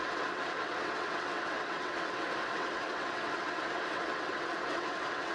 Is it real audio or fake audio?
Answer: fake